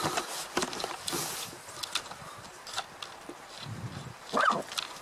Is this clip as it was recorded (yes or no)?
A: yes